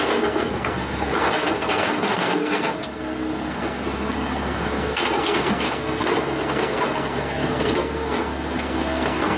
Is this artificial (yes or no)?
yes